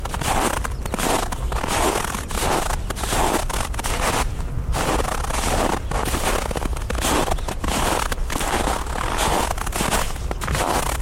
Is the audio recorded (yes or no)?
yes